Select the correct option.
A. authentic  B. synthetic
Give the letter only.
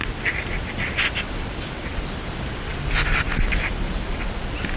A